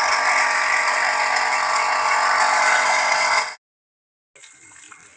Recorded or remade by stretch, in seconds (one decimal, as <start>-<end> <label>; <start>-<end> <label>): 0.0-5.2 recorded